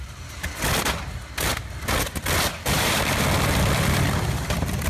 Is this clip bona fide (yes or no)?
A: no